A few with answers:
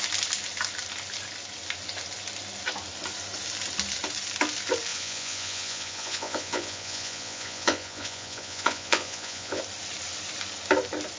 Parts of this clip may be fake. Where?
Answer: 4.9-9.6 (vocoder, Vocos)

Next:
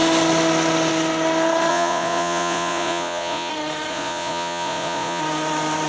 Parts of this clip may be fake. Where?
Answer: 1.7-3.5 (vocoder, Vocos); 3.9-5.2

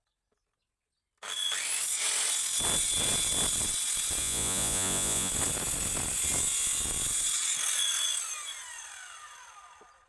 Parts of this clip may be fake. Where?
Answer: 4.2-5.3 (vocoder, Vocos)

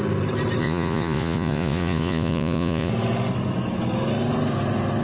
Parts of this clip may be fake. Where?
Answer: 0.6-2.9 (vocoder, Vocos)

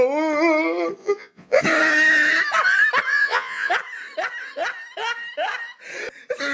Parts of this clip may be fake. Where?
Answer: 1.0-1.6 (vocoder, Vocos); 3.1-3.7

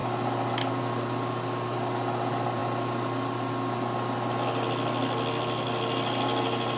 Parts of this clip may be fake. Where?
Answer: none

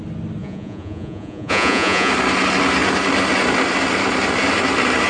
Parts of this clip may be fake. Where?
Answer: 0.4-2.1 (vocoder, Vocos)

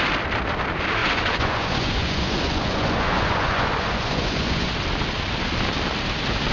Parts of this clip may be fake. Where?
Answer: 1.0-4.7 (vocoder, Vocos)